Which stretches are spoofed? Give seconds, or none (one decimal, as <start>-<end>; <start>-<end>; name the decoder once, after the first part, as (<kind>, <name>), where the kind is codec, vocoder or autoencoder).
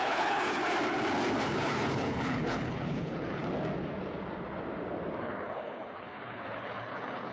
0.0-0.6 (codec, HILCodec); 1.4-3.4; 5.2-7.3